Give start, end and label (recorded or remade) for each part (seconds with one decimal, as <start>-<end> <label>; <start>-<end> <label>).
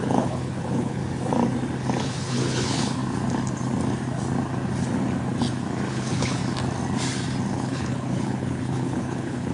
0.0-1.0 remade; 1.0-2.0 recorded; 2.0-3.0 remade; 3.0-5.9 recorded; 5.9-6.4 remade; 6.4-7.5 recorded; 7.5-9.5 remade